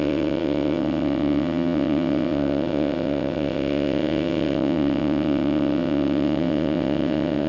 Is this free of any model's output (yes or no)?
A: no